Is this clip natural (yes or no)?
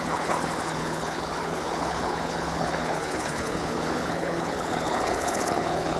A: no